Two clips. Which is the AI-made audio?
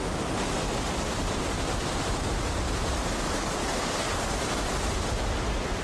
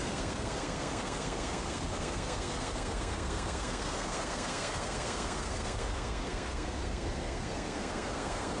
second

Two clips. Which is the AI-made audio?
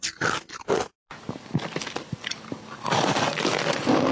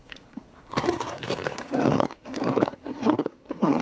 second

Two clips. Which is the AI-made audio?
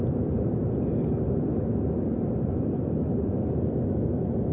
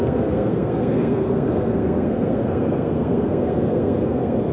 second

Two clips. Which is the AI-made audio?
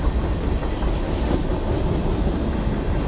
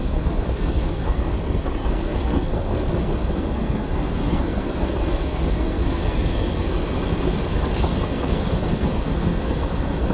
second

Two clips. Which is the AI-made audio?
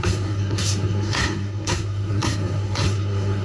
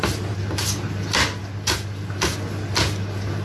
first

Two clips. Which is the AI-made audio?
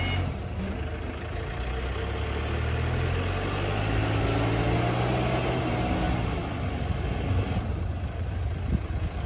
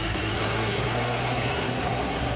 second